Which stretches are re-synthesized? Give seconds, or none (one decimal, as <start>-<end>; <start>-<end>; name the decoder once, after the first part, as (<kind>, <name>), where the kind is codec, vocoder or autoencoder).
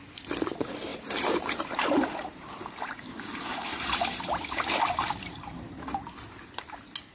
0.9-4.4 (vocoder, BigVGAN v2)